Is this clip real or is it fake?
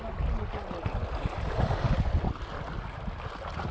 real